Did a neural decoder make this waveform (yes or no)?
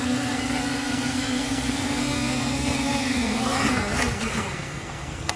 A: yes